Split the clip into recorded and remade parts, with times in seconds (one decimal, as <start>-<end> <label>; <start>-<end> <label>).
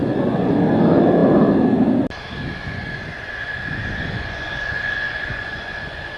0.0-0.5 remade; 0.5-2.6 recorded; 2.6-6.2 remade